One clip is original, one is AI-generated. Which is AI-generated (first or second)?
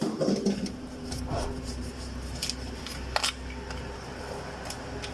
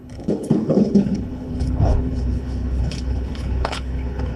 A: second